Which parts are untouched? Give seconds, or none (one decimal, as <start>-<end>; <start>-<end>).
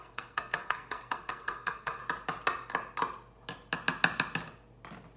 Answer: 2.0-5.2